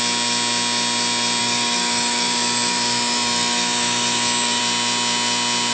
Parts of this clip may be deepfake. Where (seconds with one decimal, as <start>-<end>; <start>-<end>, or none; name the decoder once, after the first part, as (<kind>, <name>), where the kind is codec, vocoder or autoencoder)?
1.4-4.6 (autoencoder, DAC-VAE)